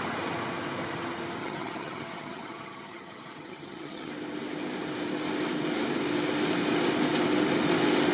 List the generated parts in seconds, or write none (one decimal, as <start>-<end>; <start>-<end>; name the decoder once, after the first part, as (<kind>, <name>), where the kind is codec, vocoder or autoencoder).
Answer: 1.4-4.1 (vocoder, HiFi-GAN)